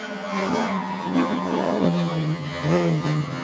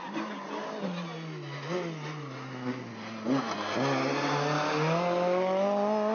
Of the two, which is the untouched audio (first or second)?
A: second